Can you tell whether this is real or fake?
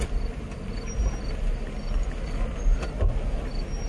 real